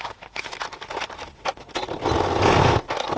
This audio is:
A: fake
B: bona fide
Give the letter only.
B